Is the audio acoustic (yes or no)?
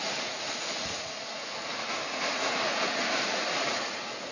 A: no